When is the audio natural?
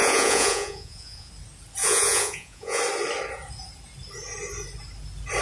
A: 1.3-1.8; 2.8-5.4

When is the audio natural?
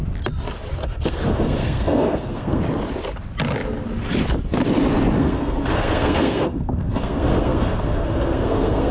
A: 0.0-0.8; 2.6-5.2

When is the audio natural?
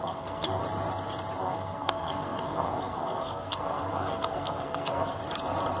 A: 0.6-1.4; 5.2-5.8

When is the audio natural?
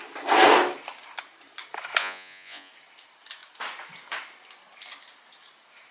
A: 0.0-2.0; 2.7-5.9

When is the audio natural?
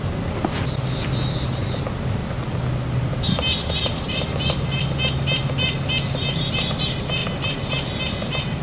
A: 0.0-8.6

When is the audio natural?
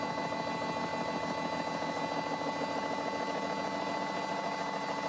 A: 0.0-5.1